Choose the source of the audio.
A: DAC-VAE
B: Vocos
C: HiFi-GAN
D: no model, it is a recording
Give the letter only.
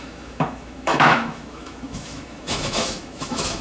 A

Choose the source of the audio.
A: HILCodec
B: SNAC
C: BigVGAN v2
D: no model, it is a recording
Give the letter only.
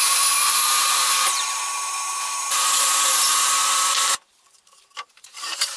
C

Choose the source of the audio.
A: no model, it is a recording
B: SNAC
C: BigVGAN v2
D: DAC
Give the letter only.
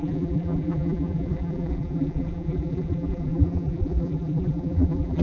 C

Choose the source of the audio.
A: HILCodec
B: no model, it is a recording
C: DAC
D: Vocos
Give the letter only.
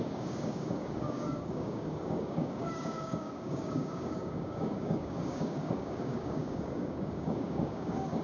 C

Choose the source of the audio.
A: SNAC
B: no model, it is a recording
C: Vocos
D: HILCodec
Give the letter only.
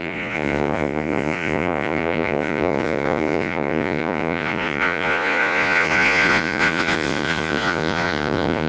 C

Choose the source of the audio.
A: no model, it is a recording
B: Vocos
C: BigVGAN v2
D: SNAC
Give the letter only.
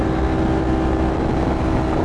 A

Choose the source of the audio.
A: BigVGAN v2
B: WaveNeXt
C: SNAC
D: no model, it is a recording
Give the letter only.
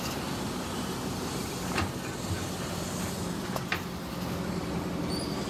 D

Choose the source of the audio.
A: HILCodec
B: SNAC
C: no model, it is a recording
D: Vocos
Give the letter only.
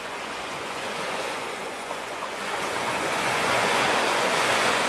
D